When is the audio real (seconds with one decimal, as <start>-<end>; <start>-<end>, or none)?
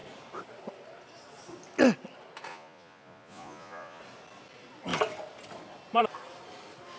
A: 0.0-2.5; 4.0-7.0